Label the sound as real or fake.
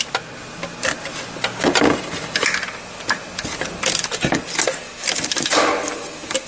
real